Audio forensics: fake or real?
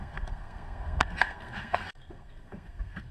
fake